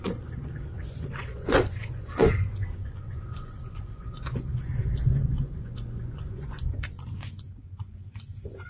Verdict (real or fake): fake